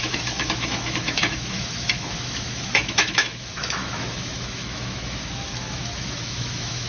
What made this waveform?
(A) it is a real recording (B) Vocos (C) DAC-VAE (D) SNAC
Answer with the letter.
C